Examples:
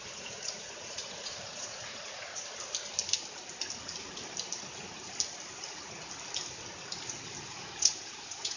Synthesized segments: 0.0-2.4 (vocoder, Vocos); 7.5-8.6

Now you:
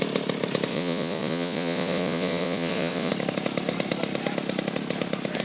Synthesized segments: 0.7-3.1 (vocoder, Vocos)

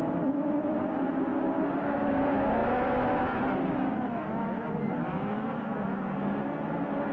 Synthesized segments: none

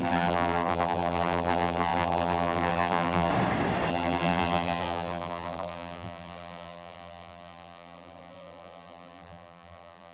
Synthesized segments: 0.0-3.3 (vocoder, BigVGAN v2); 3.9-10.1

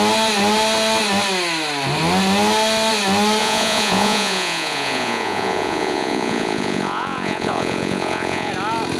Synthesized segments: 3.4-8.5 (vocoder, Vocos)

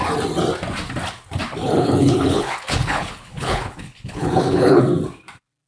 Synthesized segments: 1.6-4.8 (codec, HILCodec)

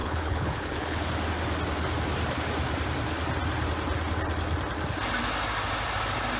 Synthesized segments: 0.0-1.1 (codec, HILCodec)